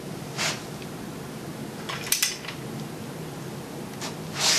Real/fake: real